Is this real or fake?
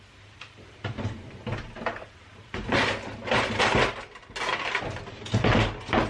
real